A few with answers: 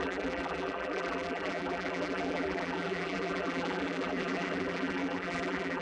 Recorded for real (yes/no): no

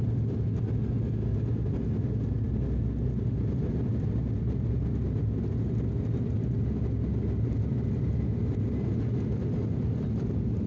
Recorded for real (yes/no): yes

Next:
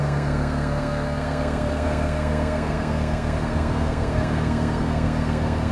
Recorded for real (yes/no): no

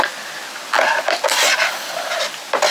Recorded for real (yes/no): yes